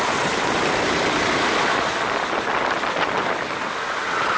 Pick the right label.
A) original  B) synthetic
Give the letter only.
A